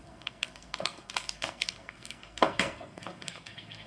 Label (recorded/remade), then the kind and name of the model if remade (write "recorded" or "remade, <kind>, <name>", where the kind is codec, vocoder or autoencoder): remade, codec, SNAC